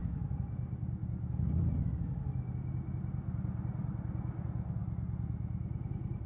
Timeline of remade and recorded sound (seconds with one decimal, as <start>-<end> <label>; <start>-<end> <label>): 0.0-6.3 recorded